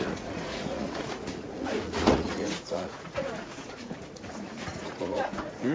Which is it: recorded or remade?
remade